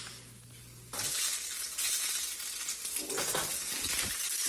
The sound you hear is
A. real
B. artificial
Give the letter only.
A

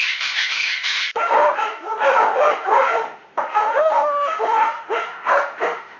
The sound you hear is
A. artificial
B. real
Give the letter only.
A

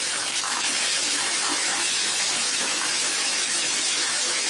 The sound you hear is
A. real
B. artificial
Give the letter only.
B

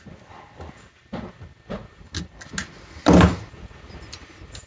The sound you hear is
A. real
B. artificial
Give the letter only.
A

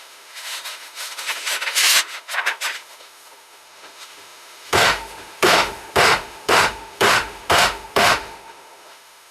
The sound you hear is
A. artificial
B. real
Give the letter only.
A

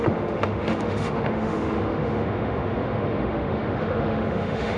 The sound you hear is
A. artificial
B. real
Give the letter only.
A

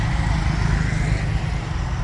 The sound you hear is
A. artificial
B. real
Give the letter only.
B